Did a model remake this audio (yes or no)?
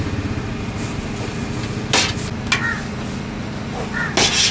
no